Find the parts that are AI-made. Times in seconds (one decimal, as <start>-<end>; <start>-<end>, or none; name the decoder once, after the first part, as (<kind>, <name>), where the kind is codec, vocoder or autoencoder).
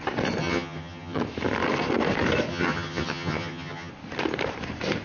0.4-1.2 (vocoder, HiFi-GAN); 2.5-3.9